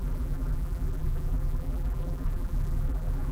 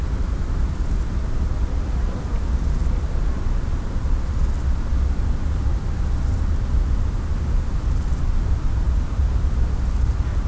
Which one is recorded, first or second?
second